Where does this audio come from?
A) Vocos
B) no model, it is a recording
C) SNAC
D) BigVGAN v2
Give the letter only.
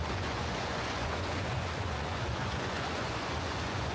A